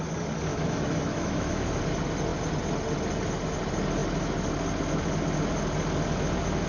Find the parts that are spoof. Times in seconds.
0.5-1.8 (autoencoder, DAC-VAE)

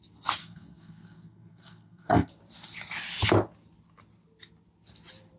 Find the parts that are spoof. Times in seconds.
0.4-2.3 (codec, SNAC)

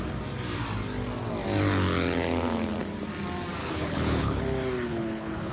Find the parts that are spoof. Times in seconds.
3.6-4.4 (codec, HILCodec); 4.9-5.5

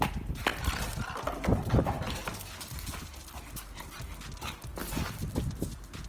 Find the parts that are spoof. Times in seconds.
none

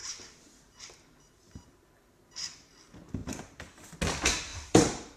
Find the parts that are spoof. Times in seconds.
0.0-2.0 (vocoder, BigVGAN v2); 3.2-3.9; 4.5-5.2

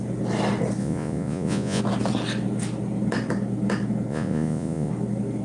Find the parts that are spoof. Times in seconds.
0.8-1.8 (vocoder, Vocos); 4.1-4.9

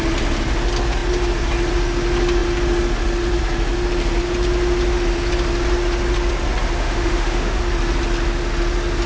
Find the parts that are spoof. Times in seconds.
6.8-7.6 (autoencoder, DAC-VAE)

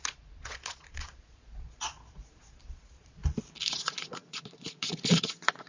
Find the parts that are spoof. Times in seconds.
0.0-3.2 (vocoder, Vocos); 3.7-5.7